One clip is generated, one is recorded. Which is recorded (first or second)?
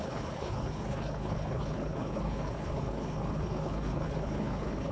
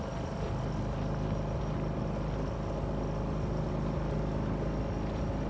second